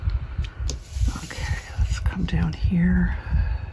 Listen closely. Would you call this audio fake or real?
real